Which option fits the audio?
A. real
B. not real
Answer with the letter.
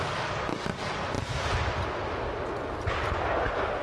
A